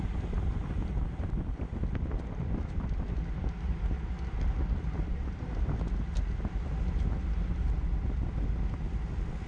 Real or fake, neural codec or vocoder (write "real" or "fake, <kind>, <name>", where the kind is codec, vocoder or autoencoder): real